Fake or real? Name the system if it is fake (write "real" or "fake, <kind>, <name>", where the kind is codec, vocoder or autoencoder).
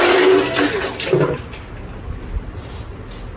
real